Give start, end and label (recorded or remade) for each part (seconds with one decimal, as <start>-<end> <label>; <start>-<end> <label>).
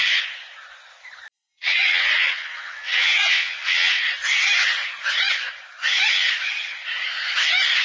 0.0-1.5 recorded; 1.5-4.0 remade; 4.0-7.8 recorded